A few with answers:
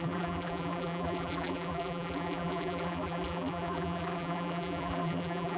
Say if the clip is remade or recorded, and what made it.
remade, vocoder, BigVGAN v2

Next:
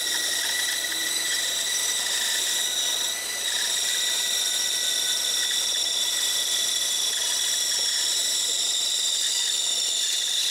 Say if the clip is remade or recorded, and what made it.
recorded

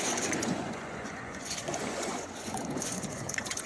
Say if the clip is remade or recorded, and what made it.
remade, vocoder, Vocos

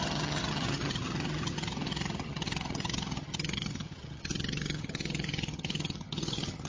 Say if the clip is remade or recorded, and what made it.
remade, vocoder, HiFi-GAN